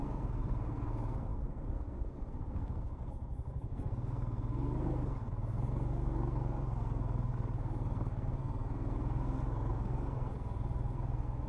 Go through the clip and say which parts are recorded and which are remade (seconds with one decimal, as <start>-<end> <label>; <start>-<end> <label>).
0.0-11.5 remade